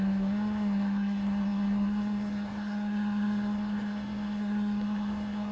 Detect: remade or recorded remade